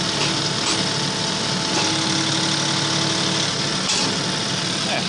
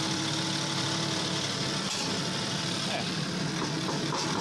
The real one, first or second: first